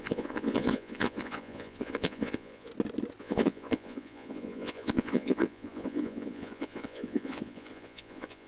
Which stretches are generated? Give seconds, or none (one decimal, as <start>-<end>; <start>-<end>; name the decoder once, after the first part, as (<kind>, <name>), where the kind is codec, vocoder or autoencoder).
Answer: 0.0-2.7 (vocoder, Vocos); 3.2-8.5